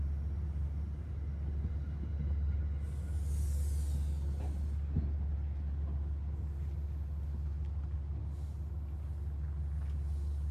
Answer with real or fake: real